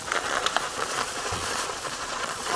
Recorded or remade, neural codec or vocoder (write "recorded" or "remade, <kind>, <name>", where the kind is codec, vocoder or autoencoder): remade, vocoder, Vocos